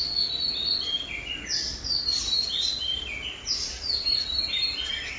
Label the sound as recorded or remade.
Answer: recorded